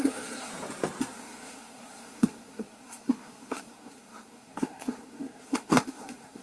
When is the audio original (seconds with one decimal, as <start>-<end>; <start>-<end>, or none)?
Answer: 0.5-1.1